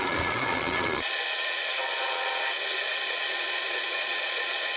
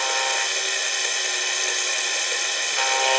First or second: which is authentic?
second